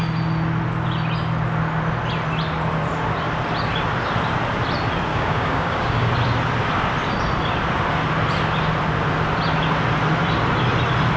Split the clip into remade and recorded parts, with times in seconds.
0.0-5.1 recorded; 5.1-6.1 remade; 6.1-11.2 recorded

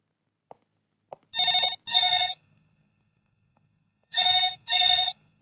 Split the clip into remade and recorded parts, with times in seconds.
0.0-1.9 recorded; 1.9-5.4 remade

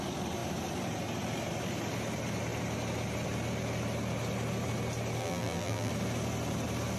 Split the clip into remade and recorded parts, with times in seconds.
0.0-5.2 recorded; 5.2-5.9 remade; 5.9-7.0 recorded

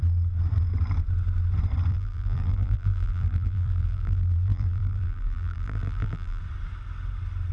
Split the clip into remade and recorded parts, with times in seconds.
0.0-1.9 recorded; 1.9-6.4 remade; 6.4-7.5 recorded

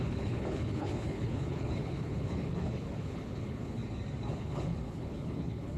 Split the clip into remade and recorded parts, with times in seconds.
0.0-3.8 remade; 3.8-4.3 recorded; 4.3-5.8 remade

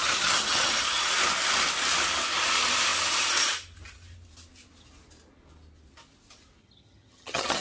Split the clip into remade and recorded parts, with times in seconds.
0.0-1.0 remade; 1.0-6.6 recorded; 6.6-7.6 remade

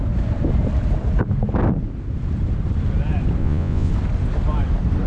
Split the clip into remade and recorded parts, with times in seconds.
0.0-3.4 recorded; 3.4-3.9 remade; 3.9-5.1 recorded